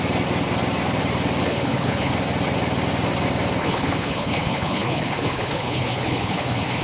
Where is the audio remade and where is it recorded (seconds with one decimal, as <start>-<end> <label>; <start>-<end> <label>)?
0.0-1.4 recorded; 1.4-2.1 remade; 2.1-3.6 recorded; 3.6-6.8 remade